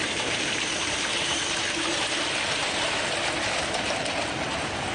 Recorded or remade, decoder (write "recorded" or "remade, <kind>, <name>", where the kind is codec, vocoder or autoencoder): remade, vocoder, BigVGAN v2